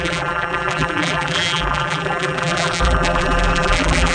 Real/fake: fake